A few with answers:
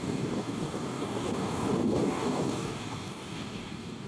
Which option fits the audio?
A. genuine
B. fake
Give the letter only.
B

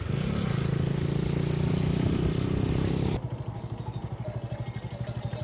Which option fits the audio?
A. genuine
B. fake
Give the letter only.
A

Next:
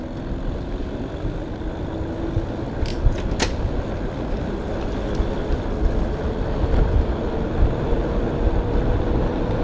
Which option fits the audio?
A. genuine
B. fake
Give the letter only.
A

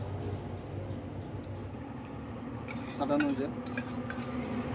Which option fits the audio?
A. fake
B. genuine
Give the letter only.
B